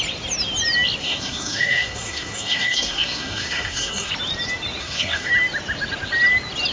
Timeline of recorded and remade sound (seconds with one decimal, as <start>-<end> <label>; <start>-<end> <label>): 0.0-1.0 recorded; 1.0-4.1 remade; 4.1-4.8 recorded; 4.8-5.3 remade; 5.3-6.7 recorded